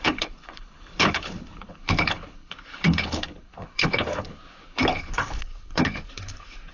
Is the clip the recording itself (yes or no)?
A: no